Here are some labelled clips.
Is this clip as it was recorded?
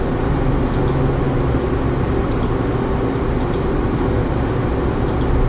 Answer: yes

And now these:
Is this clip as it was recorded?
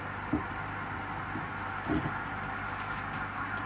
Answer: yes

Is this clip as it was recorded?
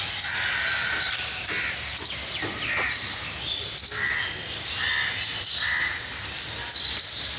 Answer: yes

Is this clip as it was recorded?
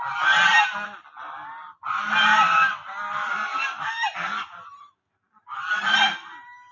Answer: yes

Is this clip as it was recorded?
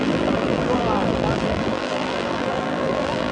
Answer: no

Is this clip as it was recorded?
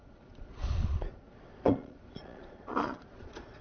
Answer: no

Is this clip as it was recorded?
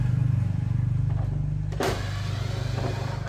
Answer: yes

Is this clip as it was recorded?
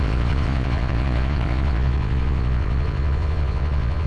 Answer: no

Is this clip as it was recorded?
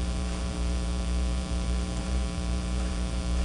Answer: no